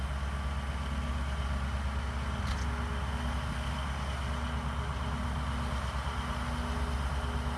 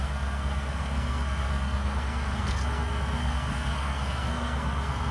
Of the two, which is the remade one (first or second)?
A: second